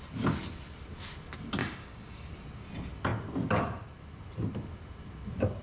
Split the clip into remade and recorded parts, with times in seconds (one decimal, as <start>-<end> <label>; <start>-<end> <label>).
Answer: 0.0-1.6 recorded; 1.6-2.3 remade; 2.3-5.6 recorded